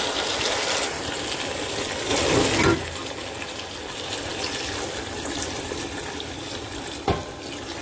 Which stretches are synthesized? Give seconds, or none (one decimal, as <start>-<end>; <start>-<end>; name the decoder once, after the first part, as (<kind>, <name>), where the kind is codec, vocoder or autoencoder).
none